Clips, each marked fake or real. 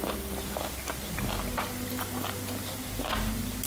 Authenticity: real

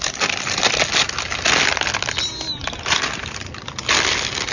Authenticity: real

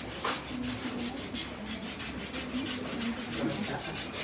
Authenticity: real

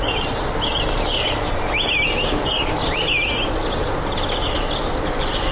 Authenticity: real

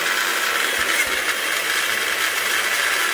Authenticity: real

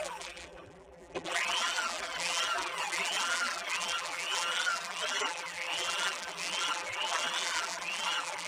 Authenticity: fake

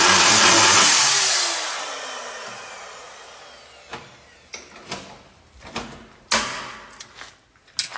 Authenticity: real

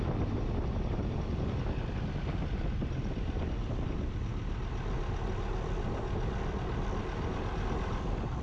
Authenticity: real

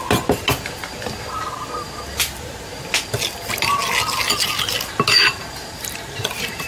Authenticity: real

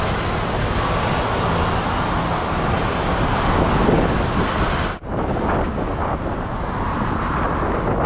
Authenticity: real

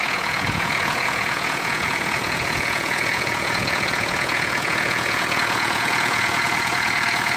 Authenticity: fake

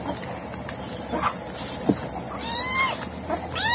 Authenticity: real